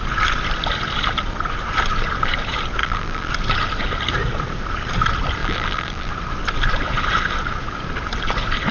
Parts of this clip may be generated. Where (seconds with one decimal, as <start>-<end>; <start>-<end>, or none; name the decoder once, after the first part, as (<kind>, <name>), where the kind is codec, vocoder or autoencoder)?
2.8-3.3 (vocoder, BigVGAN v2); 5.4-6.1